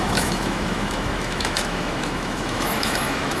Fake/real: fake